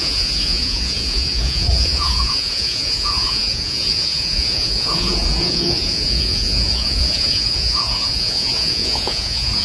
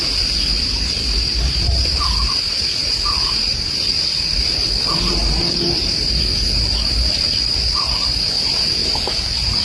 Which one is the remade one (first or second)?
first